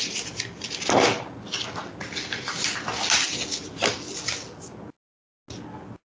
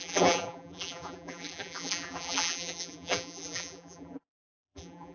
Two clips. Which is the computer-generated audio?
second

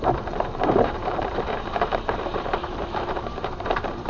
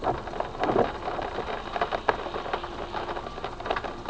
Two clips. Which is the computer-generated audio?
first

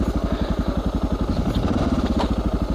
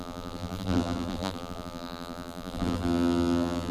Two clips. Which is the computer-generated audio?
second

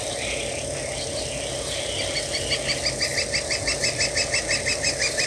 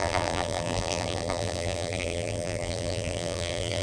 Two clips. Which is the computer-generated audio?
second